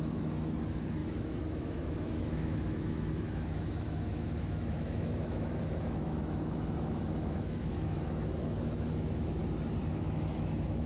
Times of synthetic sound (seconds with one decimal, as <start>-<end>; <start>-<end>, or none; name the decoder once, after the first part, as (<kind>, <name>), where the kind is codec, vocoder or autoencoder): 0.0-9.4 (autoencoder, DAC-VAE); 9.9-10.9